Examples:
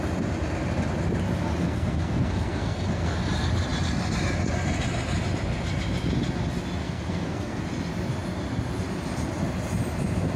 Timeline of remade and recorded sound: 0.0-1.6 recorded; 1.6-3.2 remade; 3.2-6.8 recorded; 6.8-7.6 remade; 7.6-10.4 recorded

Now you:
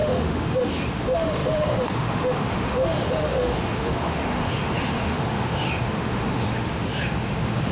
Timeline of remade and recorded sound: 0.0-7.7 remade

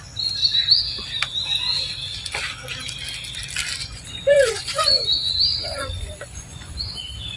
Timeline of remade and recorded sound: 0.0-3.8 recorded; 3.8-5.3 remade; 5.3-5.7 recorded; 5.7-6.9 remade; 6.9-7.4 recorded

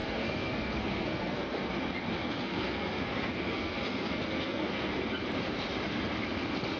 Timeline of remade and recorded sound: 0.0-1.7 remade; 1.7-2.2 recorded; 2.2-4.9 remade; 4.9-6.8 recorded

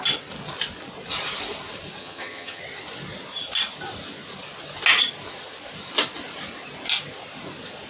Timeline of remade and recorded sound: 0.0-2.0 recorded; 2.0-2.6 remade; 2.6-7.9 recorded

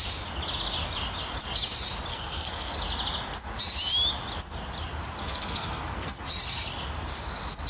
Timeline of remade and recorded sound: 0.0-2.1 recorded; 2.1-2.7 remade; 2.7-5.2 recorded; 5.2-6.2 remade; 6.2-7.7 recorded

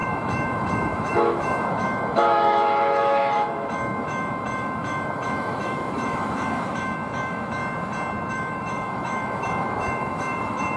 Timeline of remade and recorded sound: 0.0-7.6 remade; 7.6-8.3 recorded; 8.3-10.8 remade

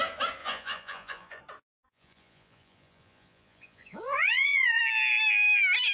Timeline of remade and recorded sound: 0.0-0.4 recorded; 0.4-1.4 remade; 1.4-1.8 recorded; 1.8-4.8 remade; 4.8-5.9 recorded